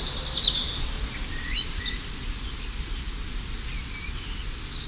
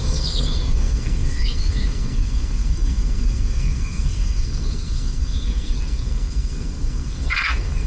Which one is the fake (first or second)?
second